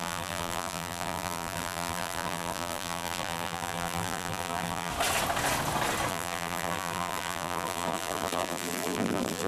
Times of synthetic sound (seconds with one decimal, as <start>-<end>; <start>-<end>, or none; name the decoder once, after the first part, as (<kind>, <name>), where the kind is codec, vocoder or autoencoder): 0.0-4.9 (vocoder, BigVGAN v2); 6.1-9.5